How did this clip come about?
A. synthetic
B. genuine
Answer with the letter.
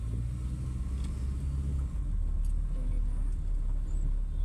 B